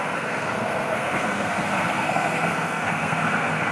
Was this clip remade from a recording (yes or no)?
yes